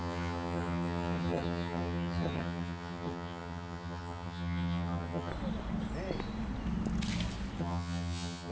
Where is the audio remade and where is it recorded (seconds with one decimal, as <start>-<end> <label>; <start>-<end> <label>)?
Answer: 0.0-5.3 remade; 5.3-7.6 recorded; 7.6-8.5 remade